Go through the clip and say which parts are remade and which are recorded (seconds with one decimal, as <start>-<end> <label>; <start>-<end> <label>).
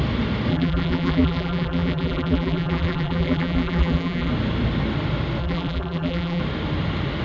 0.0-0.5 recorded; 0.5-4.3 remade; 4.3-5.4 recorded; 5.4-6.4 remade; 6.4-7.2 recorded